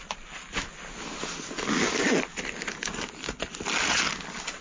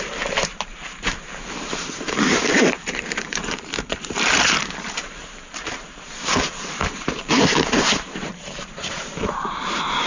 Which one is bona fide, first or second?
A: first